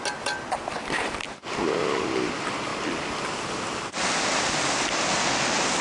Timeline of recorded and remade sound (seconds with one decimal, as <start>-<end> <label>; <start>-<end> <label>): 0.0-5.8 recorded